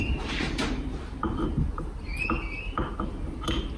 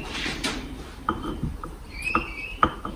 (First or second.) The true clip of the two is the first